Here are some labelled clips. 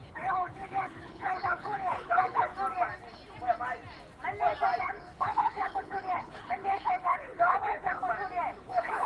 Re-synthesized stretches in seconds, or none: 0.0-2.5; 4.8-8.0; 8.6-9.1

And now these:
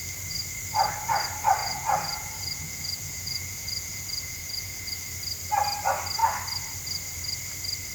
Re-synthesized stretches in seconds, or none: 1.6-4.9

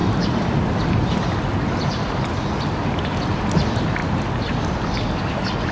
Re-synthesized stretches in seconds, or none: 0.0-3.3

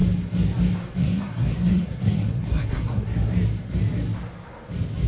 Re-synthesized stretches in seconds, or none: 1.0-3.3